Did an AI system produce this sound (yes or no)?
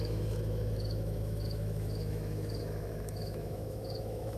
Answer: yes